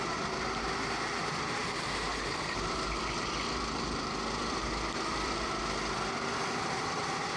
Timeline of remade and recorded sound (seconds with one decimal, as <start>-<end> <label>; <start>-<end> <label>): 0.0-1.2 recorded; 1.2-5.6 remade; 5.6-7.4 recorded